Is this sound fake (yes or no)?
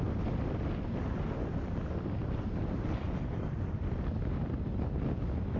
no